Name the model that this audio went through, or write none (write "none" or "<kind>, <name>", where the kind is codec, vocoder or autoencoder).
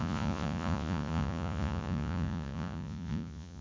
vocoder, Vocos